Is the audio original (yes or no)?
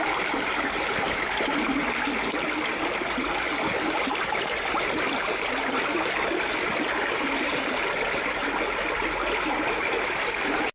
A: yes